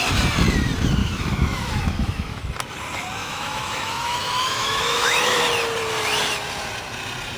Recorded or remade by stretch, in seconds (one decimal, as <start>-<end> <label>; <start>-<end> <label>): 0.0-1.0 recorded; 1.0-2.4 remade; 2.4-3.2 recorded; 3.2-5.4 remade; 5.4-7.4 recorded